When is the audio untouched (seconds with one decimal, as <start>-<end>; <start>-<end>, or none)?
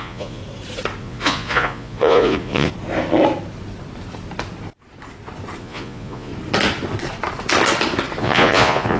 0.4-1.0; 2.7-5.6; 6.3-8.2